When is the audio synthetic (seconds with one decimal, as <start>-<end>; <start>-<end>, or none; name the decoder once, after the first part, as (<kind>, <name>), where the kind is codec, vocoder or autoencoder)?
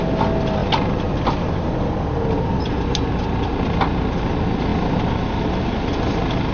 none